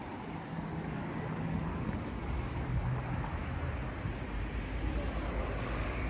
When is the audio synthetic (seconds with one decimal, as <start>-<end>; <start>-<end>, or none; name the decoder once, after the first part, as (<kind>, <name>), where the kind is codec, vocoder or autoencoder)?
0.8-3.4 (codec, DAC); 5.3-6.1